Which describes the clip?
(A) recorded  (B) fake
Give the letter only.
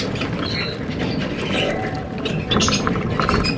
A